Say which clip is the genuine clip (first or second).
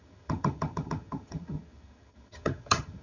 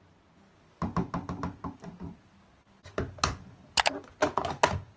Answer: second